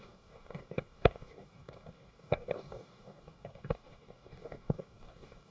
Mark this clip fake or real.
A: fake